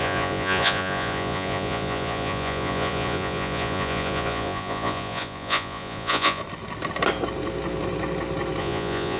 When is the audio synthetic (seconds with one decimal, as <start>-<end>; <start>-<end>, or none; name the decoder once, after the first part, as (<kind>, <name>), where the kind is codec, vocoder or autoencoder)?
0.0-6.4 (vocoder, Vocos); 8.6-9.2